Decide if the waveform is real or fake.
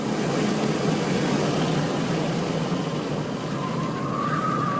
real